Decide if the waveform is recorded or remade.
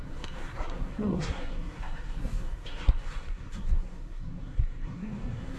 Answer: remade